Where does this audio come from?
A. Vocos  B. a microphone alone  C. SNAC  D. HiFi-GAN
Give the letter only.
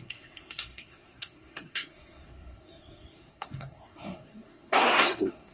C